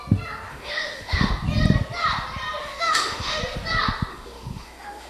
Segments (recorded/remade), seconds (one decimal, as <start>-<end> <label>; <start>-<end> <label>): 0.0-0.5 recorded; 0.5-1.3 remade; 1.3-2.6 recorded; 2.6-3.4 remade; 3.4-4.1 recorded; 4.1-5.1 remade

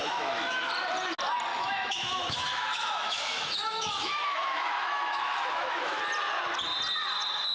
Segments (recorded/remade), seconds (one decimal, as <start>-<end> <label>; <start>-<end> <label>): 0.0-0.7 remade; 0.7-1.5 recorded; 1.5-6.0 remade; 6.0-7.5 recorded

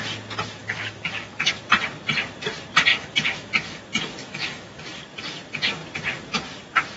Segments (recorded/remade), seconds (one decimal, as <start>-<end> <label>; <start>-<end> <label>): 0.0-0.6 recorded; 0.6-1.5 remade; 1.5-2.9 recorded; 2.9-3.8 remade; 3.8-4.2 recorded; 4.2-5.0 remade; 5.0-7.0 recorded

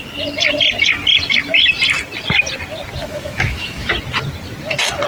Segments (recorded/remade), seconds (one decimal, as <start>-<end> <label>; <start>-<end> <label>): 0.0-3.0 recorded; 3.0-3.9 remade; 3.9-5.1 recorded

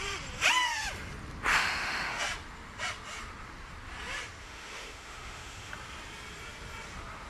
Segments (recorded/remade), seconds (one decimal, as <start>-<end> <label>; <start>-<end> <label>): 0.0-1.5 recorded; 1.5-2.2 remade; 2.2-4.4 recorded; 4.4-5.7 remade; 5.7-7.3 recorded

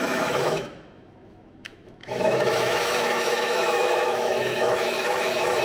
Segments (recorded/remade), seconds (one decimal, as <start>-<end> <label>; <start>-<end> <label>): 0.0-5.6 remade

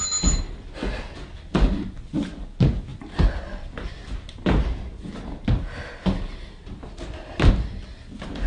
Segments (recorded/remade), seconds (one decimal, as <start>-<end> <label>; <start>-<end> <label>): 0.0-8.5 recorded

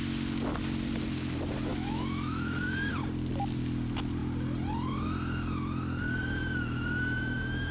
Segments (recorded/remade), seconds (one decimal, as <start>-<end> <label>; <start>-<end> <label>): 0.0-1.7 recorded; 1.7-2.9 remade; 2.9-6.4 recorded; 6.4-7.7 remade